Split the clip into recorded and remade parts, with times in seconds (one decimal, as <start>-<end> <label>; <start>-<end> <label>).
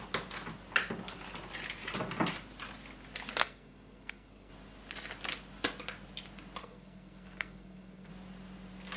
0.0-3.4 recorded; 3.4-4.5 remade; 4.5-6.6 recorded; 6.6-8.1 remade; 8.1-9.0 recorded